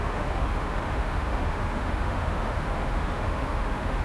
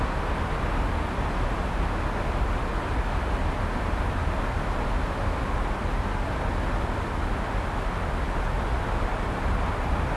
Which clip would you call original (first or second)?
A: second